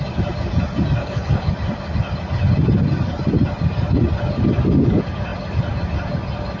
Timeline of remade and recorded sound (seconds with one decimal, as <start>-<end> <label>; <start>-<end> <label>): 0.0-1.0 recorded; 1.0-1.5 remade; 1.5-6.6 recorded